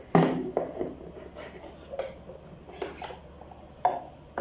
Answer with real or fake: real